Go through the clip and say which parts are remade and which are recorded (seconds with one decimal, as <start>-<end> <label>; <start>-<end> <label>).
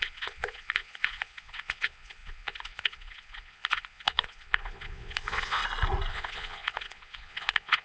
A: 0.0-5.6 remade; 5.6-6.1 recorded; 6.1-7.8 remade